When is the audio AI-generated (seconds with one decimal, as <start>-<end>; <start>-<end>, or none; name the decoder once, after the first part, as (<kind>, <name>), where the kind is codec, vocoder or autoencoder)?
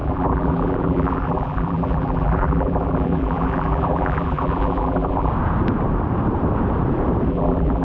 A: 0.0-5.3 (vocoder, BigVGAN v2); 7.3-7.8